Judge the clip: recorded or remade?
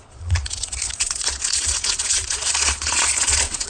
remade